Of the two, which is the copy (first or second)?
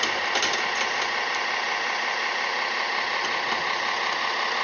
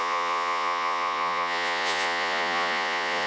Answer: second